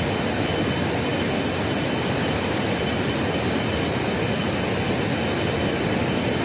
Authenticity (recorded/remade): recorded